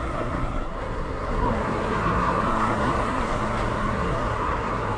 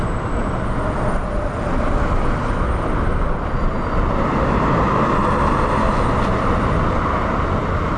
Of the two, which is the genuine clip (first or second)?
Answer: second